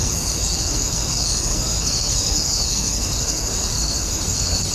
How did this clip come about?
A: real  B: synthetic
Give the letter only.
B